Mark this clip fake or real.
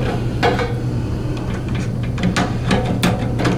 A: real